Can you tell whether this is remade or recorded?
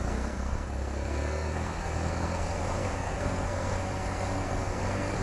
remade